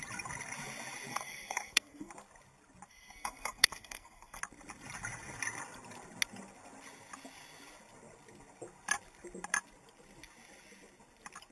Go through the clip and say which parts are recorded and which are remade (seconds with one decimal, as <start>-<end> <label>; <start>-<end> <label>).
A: 0.0-1.1 recorded; 1.1-2.1 remade; 2.1-2.9 recorded; 2.9-4.4 remade; 4.4-11.5 recorded